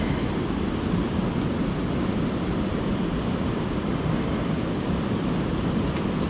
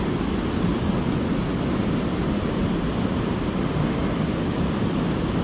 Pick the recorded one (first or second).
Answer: second